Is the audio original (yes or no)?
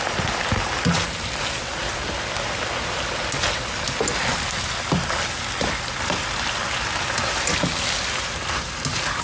yes